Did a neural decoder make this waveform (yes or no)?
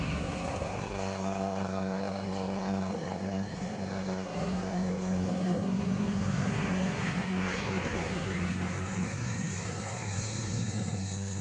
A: yes